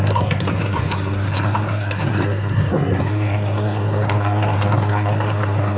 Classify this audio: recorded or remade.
remade